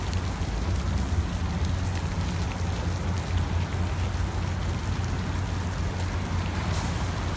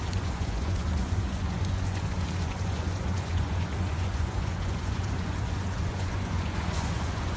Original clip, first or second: first